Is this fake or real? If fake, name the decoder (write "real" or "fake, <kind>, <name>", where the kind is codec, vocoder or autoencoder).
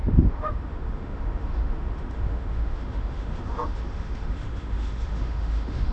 fake, autoencoder, DAC-VAE